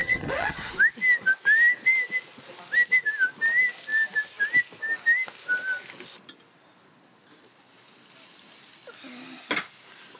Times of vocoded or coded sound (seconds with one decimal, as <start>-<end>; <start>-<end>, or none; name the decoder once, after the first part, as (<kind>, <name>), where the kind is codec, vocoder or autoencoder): 0.0-0.7 (vocoder, HiFi-GAN)